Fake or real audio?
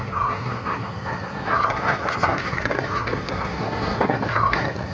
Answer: fake